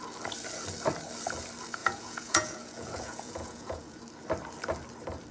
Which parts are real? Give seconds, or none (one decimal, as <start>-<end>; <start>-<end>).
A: 0.0-1.8; 4.0-5.3